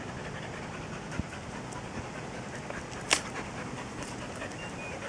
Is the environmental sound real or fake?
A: real